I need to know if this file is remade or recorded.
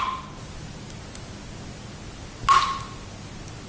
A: recorded